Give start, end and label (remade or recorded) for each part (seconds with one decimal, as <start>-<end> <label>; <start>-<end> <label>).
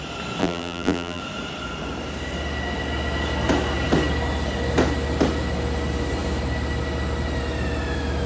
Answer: 0.0-0.4 recorded; 0.4-1.2 remade; 1.2-8.3 recorded